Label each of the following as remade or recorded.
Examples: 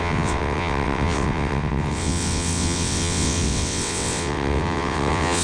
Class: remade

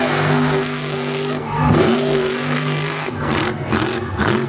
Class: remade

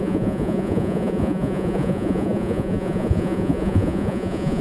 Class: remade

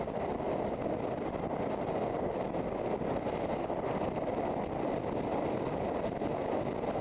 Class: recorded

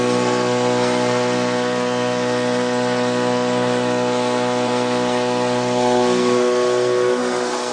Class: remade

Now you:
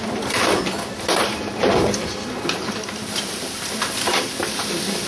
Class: remade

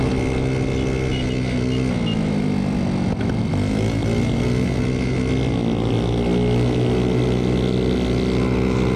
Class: recorded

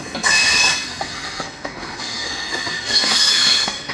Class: remade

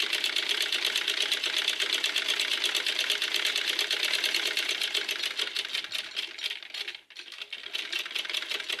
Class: recorded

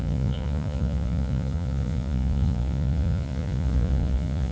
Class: remade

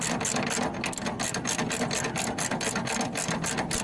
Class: recorded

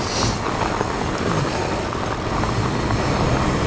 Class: recorded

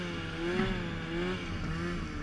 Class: recorded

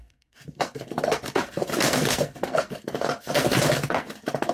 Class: remade